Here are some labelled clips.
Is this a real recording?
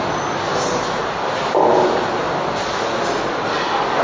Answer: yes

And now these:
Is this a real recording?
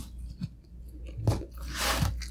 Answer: yes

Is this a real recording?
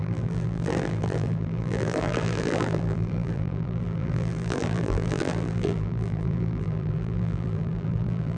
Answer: no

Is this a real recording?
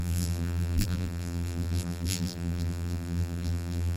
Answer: no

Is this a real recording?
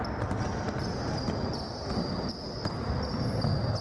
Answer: yes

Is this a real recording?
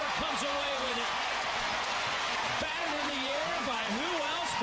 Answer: no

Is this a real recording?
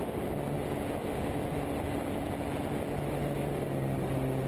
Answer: yes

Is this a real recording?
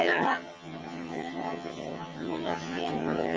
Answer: no